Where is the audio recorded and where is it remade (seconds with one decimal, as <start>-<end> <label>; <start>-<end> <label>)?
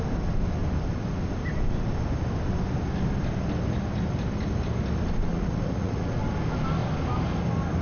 0.0-5.3 recorded; 5.3-6.2 remade; 6.2-7.8 recorded